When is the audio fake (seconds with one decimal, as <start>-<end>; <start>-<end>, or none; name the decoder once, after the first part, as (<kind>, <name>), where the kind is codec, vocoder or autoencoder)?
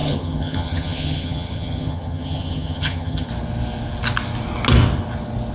0.0-3.3 (vocoder, HiFi-GAN)